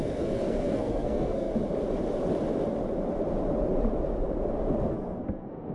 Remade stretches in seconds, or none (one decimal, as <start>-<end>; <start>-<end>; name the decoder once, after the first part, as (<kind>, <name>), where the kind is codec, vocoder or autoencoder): 0.0-1.5 (codec, SNAC); 4.9-5.7